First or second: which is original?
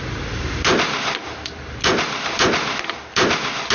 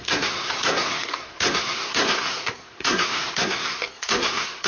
first